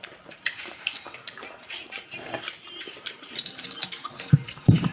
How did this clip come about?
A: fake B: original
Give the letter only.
A